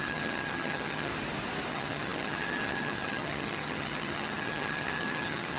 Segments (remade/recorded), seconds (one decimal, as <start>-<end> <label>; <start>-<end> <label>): 0.0-1.1 remade; 1.1-1.7 recorded; 1.7-5.6 remade